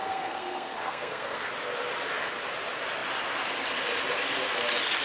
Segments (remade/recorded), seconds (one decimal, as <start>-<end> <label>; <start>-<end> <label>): 0.0-1.5 remade; 1.5-5.0 recorded